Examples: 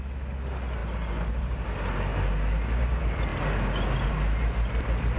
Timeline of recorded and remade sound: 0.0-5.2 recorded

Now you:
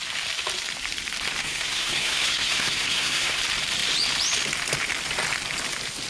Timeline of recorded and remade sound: 0.0-1.4 recorded; 1.4-3.4 remade; 3.4-6.1 recorded

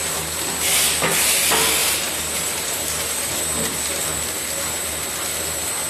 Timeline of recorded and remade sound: 0.0-1.8 recorded; 1.8-3.3 remade; 3.3-5.9 recorded

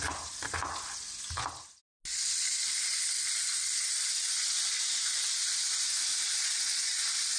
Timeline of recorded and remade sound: 0.0-7.4 recorded

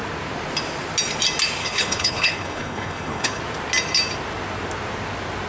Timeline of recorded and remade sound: 0.0-1.6 recorded; 1.6-3.4 remade; 3.4-5.5 recorded

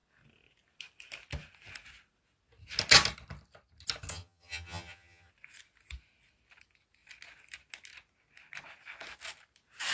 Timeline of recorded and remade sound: 0.0-4.1 recorded; 4.1-5.3 remade; 5.3-9.9 recorded

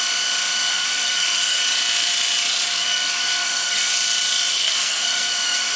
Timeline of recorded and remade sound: 0.0-0.7 recorded; 0.7-1.6 remade; 1.6-2.7 recorded; 2.7-3.9 remade; 3.9-4.5 recorded; 4.5-5.8 remade

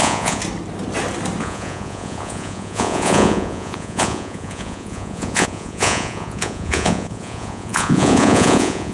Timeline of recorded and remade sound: 0.0-0.4 remade; 0.4-1.4 recorded; 1.4-8.9 remade